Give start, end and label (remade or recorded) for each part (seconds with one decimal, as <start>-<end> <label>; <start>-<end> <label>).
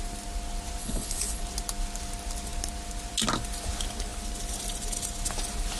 0.0-0.8 recorded; 0.8-1.4 remade; 1.4-5.8 recorded